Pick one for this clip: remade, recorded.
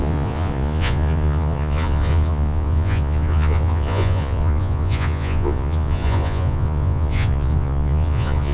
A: remade